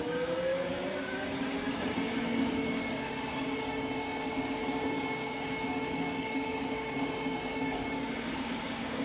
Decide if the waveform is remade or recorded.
remade